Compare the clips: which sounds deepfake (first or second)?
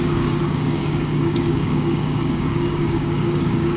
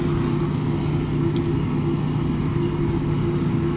first